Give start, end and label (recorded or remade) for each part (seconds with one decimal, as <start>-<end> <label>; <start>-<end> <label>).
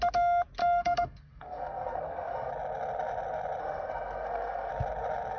0.0-0.6 recorded; 0.6-2.5 remade; 2.5-3.6 recorded; 3.6-4.7 remade; 4.7-5.4 recorded